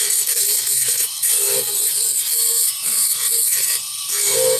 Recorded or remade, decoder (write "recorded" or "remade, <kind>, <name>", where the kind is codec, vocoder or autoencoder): remade, codec, SNAC